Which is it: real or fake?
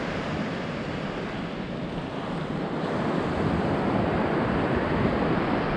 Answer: real